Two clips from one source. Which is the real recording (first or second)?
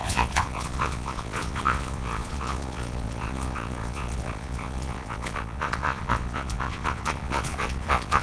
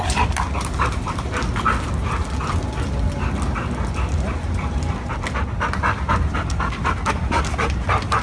second